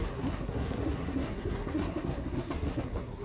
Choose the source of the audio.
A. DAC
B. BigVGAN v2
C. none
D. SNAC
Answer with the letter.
D